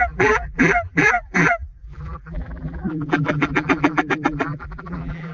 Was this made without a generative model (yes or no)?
no